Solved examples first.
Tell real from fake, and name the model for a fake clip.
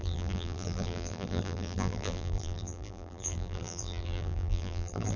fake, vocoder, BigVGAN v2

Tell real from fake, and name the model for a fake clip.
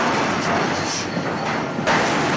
real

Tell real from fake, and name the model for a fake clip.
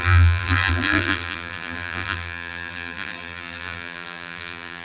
fake, vocoder, BigVGAN v2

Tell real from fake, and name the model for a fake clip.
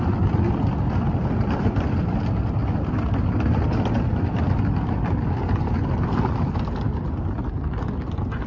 real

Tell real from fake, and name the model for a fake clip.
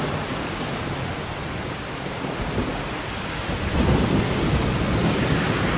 real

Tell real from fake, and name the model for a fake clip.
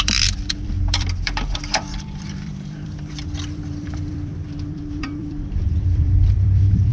fake, vocoder, BigVGAN v2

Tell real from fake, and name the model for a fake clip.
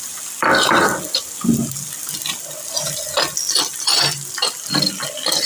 real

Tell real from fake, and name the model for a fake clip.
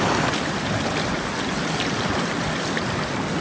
real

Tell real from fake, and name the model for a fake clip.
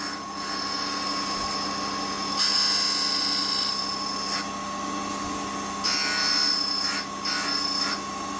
real